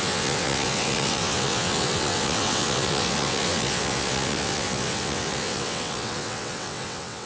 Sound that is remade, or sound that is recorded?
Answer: remade